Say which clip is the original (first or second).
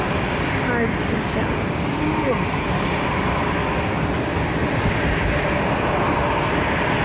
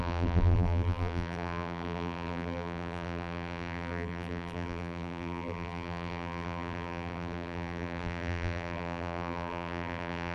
first